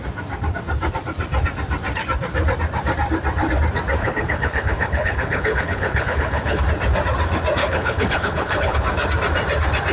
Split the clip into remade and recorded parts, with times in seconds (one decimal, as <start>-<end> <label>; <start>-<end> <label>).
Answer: 0.0-4.0 recorded; 4.0-6.6 remade; 6.6-7.6 recorded; 7.6-8.8 remade; 8.8-9.9 recorded